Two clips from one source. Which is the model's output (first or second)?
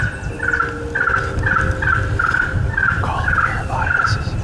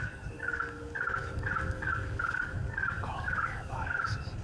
second